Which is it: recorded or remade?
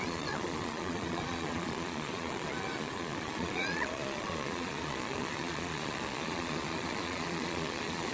remade